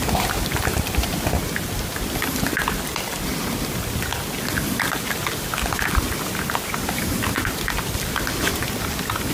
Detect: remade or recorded recorded